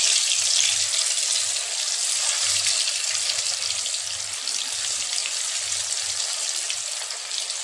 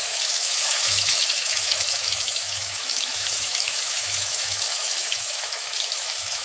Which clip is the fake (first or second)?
second